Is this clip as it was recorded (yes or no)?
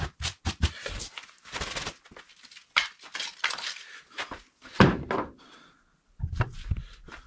yes